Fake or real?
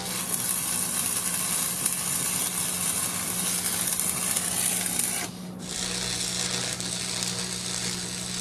real